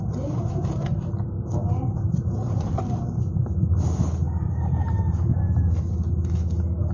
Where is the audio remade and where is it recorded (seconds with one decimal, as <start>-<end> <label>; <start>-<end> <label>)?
0.0-2.1 recorded; 2.1-2.7 remade; 2.7-6.9 recorded